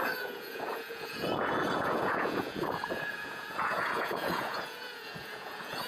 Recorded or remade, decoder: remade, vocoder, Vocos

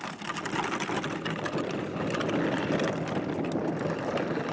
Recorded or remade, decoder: recorded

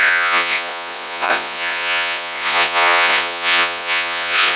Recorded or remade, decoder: remade, vocoder, Vocos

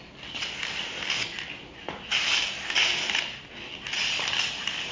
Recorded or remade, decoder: recorded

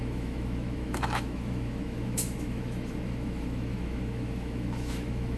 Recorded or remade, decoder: remade, autoencoder, DAC-VAE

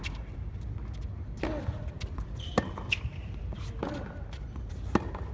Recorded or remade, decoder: recorded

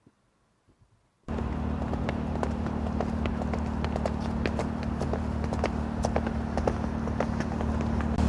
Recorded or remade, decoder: recorded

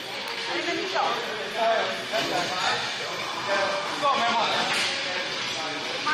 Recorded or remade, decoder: recorded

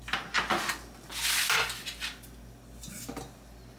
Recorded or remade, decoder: recorded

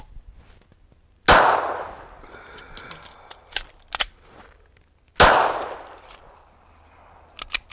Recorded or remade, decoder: recorded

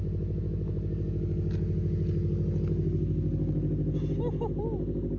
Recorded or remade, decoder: recorded